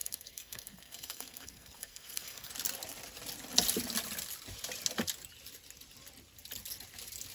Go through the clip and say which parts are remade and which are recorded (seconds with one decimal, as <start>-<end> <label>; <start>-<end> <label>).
0.0-2.5 remade; 2.5-7.3 recorded

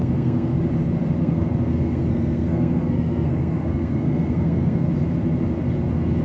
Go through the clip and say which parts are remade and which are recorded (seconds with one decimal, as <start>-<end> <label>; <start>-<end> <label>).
0.0-0.6 remade; 0.6-1.2 recorded; 1.2-4.9 remade; 4.9-6.2 recorded